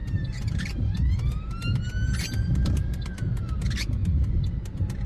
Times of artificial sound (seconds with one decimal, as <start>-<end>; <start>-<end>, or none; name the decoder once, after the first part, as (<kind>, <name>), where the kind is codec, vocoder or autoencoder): 0.0-1.1 (vocoder, BigVGAN v2); 4.0-4.6

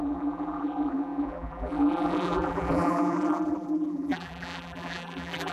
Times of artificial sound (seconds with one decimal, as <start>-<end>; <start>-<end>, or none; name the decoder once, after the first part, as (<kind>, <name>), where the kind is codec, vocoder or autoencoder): 0.0-5.5 (vocoder, BigVGAN v2)

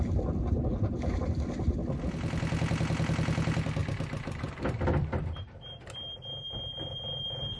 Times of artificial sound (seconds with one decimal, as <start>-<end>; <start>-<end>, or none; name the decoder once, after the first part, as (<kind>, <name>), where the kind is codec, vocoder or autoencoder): 3.8-6.3 (vocoder, BigVGAN v2); 6.7-7.6